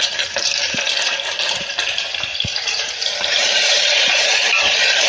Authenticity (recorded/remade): remade